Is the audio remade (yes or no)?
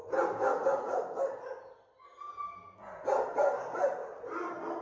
no